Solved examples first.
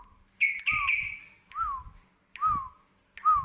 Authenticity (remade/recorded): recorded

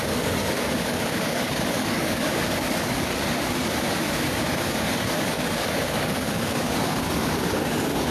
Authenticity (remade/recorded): remade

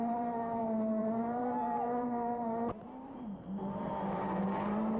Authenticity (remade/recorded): remade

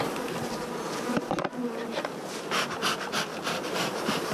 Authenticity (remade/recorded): remade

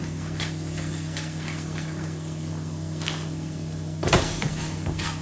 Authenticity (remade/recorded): remade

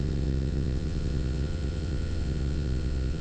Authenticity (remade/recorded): remade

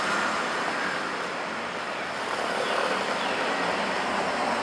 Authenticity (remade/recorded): recorded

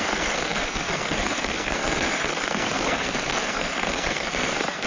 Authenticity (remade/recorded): remade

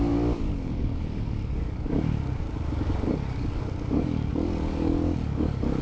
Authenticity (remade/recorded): remade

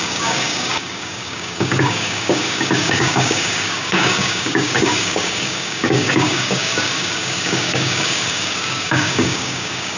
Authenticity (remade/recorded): remade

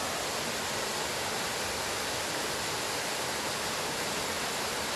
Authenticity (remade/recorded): recorded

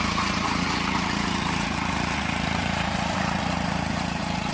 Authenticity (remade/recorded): remade